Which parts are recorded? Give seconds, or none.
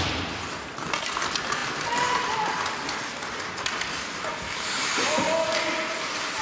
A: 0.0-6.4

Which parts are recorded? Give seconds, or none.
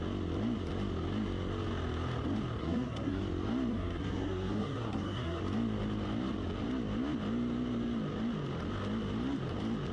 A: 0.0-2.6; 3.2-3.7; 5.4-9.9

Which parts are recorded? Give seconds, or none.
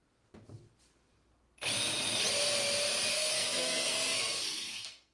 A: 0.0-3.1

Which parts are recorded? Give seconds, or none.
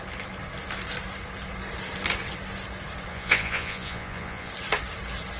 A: 0.0-3.1; 4.5-5.4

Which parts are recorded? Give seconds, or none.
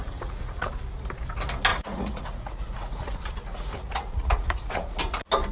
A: 0.7-1.7; 5.0-5.5